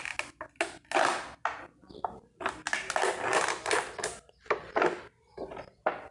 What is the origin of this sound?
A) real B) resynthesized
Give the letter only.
A